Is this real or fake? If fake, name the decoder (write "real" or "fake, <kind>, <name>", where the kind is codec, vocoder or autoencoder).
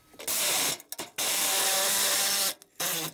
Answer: real